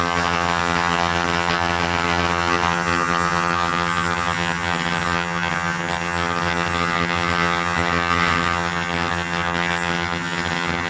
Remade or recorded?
remade